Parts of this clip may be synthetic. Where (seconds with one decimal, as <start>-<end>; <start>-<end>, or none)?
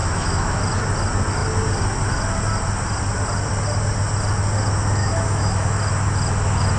0.0-0.6; 5.0-5.8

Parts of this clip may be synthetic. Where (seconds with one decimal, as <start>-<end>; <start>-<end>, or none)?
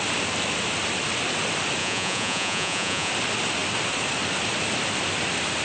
1.8-3.1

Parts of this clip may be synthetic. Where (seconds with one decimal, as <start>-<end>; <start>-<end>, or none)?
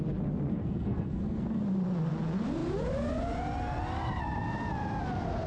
0.5-1.6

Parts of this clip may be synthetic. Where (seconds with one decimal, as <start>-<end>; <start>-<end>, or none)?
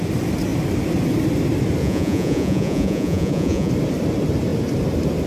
1.8-3.7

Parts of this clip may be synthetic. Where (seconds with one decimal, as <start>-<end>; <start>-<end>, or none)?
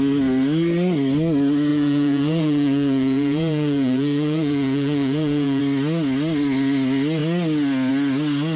1.7-5.6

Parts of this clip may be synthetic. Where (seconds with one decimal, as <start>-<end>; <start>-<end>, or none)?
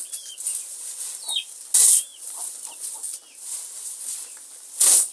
none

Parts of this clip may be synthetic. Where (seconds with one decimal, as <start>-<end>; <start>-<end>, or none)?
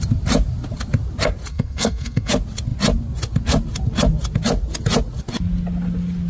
1.5-2.3